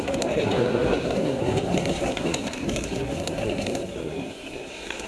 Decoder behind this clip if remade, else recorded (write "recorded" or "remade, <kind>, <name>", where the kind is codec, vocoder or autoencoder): remade, codec, SNAC